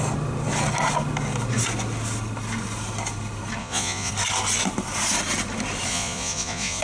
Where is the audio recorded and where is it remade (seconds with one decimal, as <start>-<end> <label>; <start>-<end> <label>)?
0.0-3.6 recorded; 3.6-4.1 remade; 4.1-5.9 recorded; 5.9-6.8 remade